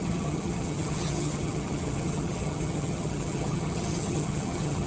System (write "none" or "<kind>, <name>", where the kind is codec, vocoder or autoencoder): vocoder, HiFi-GAN